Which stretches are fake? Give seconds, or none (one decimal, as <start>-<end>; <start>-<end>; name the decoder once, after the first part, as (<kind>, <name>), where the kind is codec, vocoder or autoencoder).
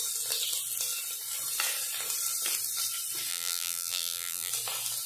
3.3-4.5 (vocoder, BigVGAN v2)